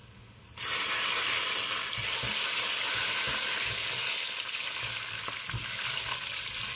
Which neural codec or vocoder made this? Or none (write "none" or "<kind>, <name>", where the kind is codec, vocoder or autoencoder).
none